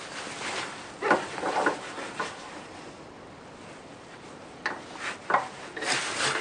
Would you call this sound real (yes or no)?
yes